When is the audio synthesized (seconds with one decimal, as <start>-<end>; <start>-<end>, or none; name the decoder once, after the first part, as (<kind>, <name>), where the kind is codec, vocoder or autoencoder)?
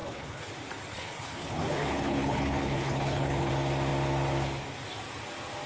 0.0-0.5 (codec, HILCodec); 0.9-3.5